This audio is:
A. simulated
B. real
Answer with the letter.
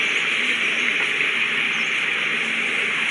B